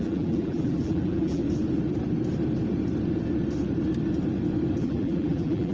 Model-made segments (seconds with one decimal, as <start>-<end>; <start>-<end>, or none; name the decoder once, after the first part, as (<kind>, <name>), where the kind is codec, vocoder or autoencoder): 0.0-1.4 (vocoder, BigVGAN v2); 4.8-5.7